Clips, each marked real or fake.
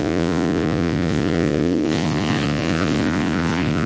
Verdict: fake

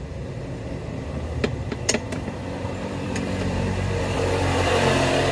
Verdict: fake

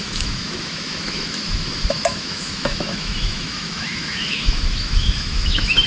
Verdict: fake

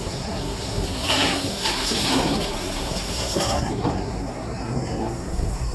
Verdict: fake